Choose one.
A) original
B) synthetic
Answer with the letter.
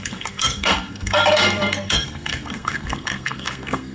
B